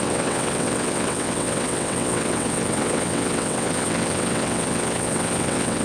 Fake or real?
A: fake